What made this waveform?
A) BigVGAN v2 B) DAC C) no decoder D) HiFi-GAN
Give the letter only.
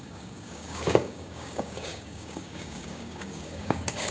B